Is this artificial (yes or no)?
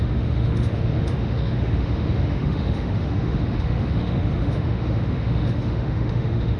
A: yes